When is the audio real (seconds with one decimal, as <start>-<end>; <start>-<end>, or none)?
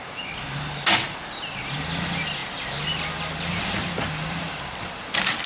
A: 0.0-5.5